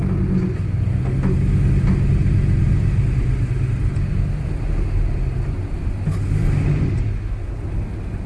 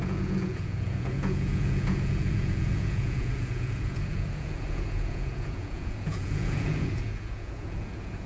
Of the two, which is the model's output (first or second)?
second